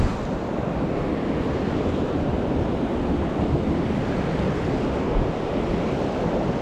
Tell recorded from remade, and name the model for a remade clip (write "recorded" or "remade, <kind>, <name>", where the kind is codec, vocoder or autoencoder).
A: recorded